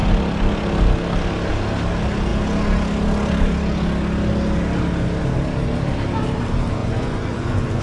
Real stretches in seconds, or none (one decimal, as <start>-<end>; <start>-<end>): 0.0-6.8